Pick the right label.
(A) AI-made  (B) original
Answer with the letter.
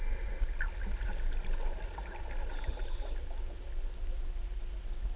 B